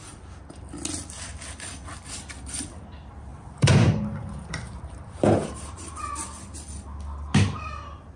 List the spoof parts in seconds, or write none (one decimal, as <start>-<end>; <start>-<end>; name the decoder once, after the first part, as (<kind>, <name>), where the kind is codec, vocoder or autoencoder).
3.3-6.0 (vocoder, BigVGAN v2)